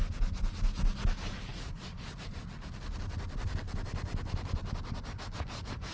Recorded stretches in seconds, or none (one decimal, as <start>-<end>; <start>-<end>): 0.0-5.9